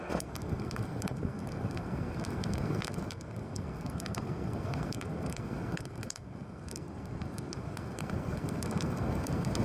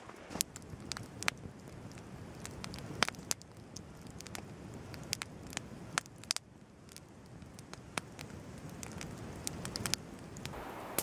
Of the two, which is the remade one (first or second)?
first